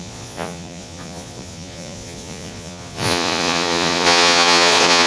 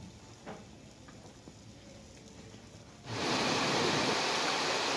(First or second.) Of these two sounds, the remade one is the first